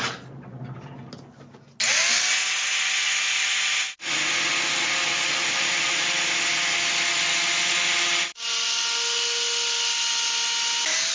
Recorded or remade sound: recorded